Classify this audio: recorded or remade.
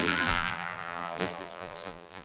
remade